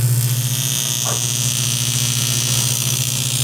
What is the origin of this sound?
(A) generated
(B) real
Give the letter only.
B